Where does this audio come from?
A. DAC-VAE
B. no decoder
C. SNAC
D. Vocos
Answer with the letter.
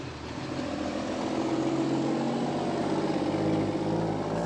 B